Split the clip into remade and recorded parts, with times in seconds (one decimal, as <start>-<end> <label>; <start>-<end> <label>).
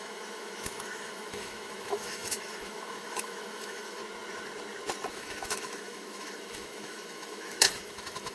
0.0-4.0 remade; 4.0-5.1 recorded; 5.1-8.3 remade